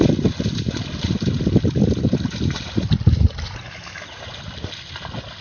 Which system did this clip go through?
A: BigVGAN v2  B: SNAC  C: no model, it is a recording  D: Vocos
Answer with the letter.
C